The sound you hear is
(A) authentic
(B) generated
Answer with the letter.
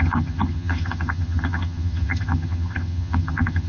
B